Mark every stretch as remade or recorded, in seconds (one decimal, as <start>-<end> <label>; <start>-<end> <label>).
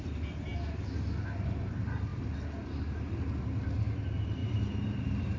0.0-4.4 recorded; 4.4-5.4 remade